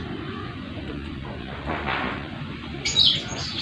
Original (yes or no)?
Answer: no